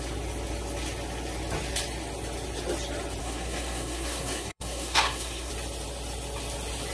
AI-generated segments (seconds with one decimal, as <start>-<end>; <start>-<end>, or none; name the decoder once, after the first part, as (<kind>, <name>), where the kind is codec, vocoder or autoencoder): 3.2-5.5 (codec, SNAC)